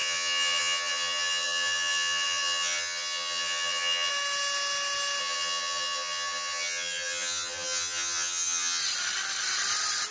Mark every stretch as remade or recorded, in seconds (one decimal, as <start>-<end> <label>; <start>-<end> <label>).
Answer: 0.0-4.1 remade; 4.1-5.2 recorded; 5.2-8.8 remade; 8.8-10.1 recorded